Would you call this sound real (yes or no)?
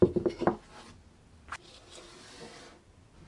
yes